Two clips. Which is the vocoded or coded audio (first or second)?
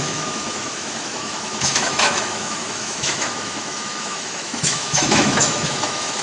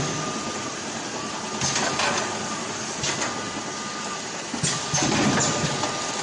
first